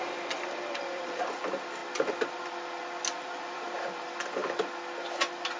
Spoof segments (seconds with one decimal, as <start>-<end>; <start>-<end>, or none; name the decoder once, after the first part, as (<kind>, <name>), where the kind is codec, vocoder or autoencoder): 0.0-1.8 (vocoder, BigVGAN v2); 3.2-4.4